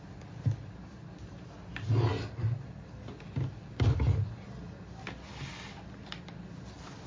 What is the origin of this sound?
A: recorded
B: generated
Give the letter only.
A